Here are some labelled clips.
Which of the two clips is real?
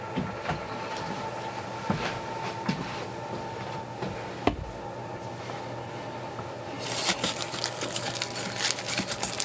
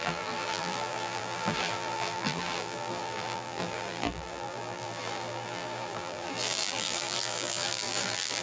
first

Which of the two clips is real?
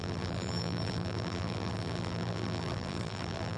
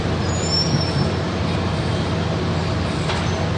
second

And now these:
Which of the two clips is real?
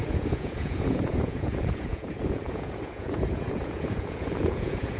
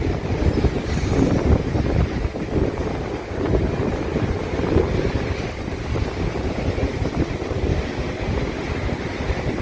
second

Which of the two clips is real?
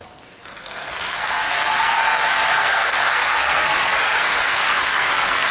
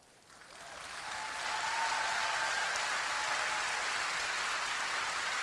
second